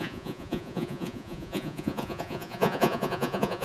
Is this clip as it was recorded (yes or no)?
no